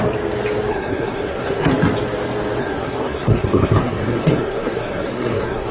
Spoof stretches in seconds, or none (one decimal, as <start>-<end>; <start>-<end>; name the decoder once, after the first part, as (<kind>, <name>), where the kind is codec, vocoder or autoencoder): 0.7-1.7 (codec, SNAC); 2.6-5.7

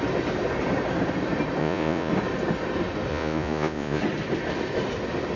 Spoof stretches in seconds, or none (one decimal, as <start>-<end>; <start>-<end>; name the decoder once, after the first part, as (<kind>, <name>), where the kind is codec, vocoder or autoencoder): 1.6-2.1 (vocoder, Vocos); 3.1-4.0

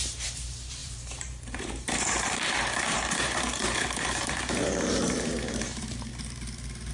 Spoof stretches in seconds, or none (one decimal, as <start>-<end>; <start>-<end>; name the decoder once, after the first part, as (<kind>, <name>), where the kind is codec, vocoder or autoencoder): 0.0-6.1 (vocoder, BigVGAN v2)

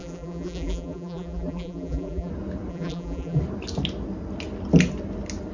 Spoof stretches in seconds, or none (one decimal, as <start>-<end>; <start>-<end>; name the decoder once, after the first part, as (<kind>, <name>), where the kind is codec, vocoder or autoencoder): 0.0-2.3 (vocoder, BigVGAN v2); 2.7-3.4